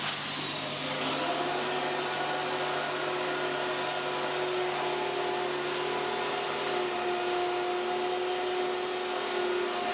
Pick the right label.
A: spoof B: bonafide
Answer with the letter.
B